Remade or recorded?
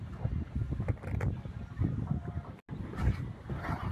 recorded